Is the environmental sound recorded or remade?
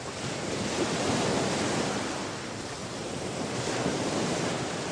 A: recorded